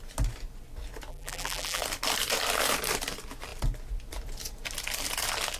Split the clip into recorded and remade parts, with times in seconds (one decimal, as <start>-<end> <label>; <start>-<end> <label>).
0.0-1.1 recorded; 1.1-1.8 remade; 1.8-5.6 recorded